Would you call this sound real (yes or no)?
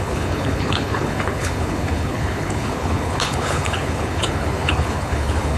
no